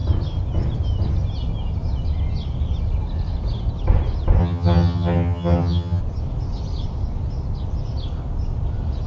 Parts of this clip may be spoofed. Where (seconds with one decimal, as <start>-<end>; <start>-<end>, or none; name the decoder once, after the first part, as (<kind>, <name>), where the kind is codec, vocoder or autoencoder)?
4.4-6.0 (vocoder, HiFi-GAN)